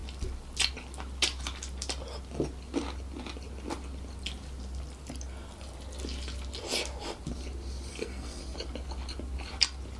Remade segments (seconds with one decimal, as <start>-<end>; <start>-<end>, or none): 7.9-8.4